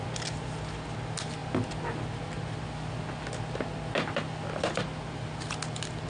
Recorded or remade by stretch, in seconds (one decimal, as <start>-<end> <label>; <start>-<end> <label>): 0.0-6.1 recorded